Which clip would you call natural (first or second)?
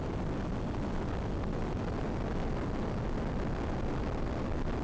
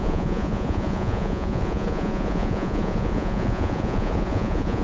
first